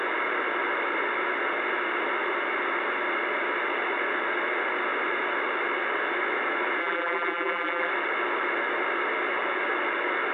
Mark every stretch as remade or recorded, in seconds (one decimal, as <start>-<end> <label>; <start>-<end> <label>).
0.0-6.8 recorded; 6.8-7.9 remade; 7.9-10.3 recorded